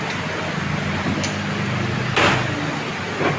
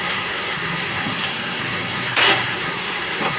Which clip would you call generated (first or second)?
second